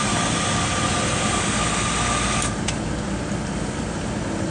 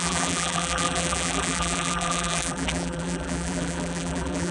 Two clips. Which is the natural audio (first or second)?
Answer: first